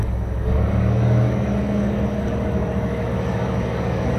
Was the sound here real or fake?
fake